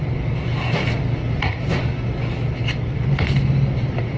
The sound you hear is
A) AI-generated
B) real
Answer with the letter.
B